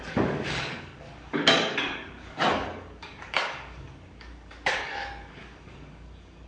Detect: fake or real fake